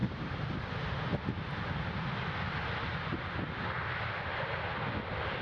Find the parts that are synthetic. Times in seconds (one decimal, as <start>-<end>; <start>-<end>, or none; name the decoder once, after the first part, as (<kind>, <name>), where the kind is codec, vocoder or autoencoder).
0.0-0.7 (vocoder, BigVGAN v2)